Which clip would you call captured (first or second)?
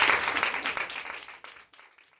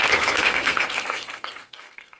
first